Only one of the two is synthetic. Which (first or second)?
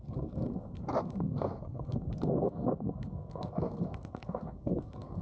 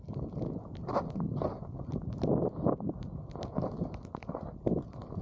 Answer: first